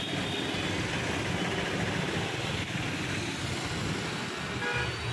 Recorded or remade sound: recorded